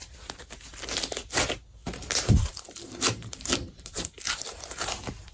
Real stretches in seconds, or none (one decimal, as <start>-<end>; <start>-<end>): 0.0-1.8